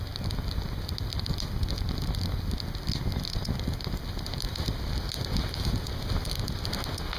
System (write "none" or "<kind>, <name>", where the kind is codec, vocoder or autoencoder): none